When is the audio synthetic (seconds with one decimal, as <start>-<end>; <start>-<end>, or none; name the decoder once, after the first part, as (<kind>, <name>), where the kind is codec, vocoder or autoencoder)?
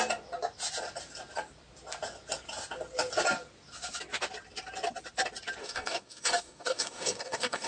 5.6-7.7 (codec, DAC)